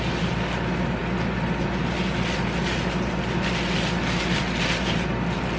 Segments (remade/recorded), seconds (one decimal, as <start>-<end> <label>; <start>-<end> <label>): 0.0-5.6 recorded